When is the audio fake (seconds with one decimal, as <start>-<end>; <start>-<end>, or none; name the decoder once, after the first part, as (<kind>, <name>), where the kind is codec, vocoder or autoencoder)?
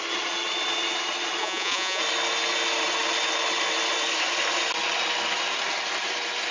1.4-2.0 (vocoder, Vocos)